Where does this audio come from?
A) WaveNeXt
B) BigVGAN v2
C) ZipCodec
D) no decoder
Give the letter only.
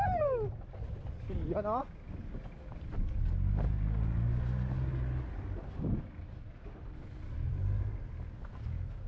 D